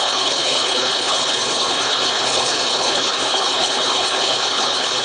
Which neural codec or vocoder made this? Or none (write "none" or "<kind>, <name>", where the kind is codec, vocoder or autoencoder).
codec, HILCodec